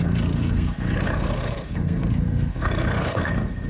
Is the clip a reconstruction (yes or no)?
yes